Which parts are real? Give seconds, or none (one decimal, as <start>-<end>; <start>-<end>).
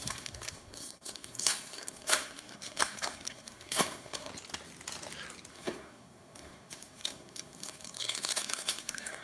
4.3-5.5